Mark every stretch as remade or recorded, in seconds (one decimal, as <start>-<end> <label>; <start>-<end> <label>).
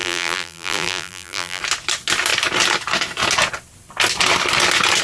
0.0-1.6 remade; 1.6-5.0 recorded